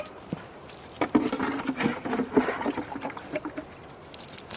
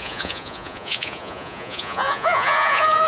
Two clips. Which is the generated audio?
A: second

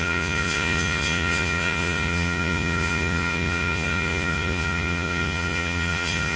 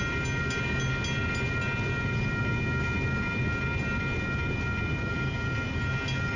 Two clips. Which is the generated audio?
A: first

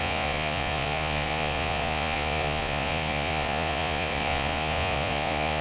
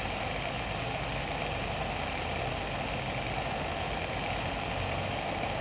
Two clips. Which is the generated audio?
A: first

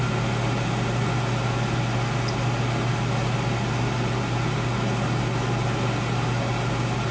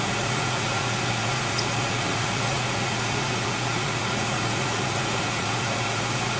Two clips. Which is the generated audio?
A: second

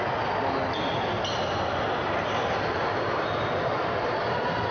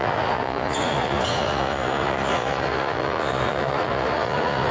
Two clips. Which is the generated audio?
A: second